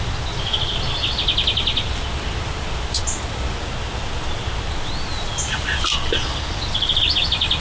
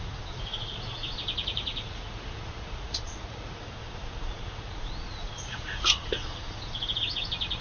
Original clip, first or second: first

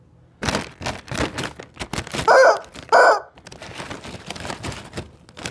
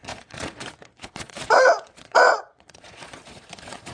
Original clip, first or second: first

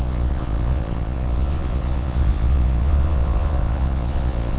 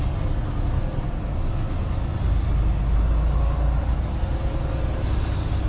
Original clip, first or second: second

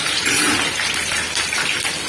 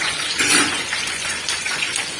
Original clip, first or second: first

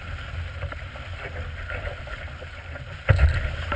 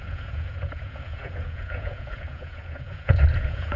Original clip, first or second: first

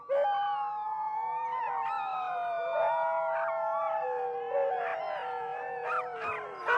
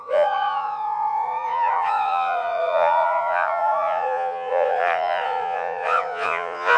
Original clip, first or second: first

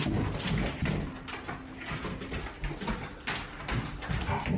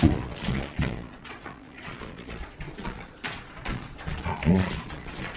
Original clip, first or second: first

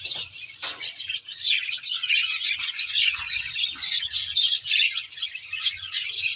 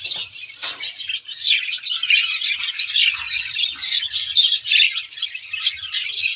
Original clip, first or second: second